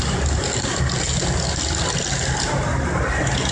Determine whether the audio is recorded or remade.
recorded